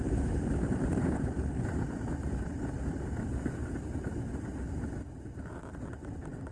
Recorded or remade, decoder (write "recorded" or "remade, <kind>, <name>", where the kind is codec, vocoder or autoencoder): remade, vocoder, BigVGAN v2